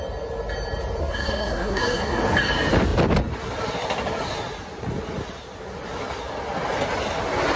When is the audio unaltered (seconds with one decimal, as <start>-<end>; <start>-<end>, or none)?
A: 0.0-1.0; 2.2-7.6